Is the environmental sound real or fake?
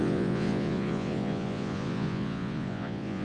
fake